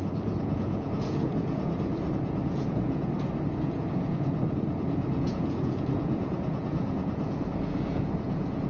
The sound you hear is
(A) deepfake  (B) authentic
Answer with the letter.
A